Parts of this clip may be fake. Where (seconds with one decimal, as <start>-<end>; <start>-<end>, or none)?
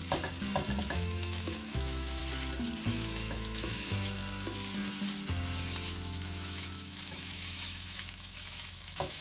0.8-2.2; 2.9-4.2; 5.9-9.2